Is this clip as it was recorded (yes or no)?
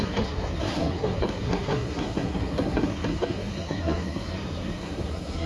no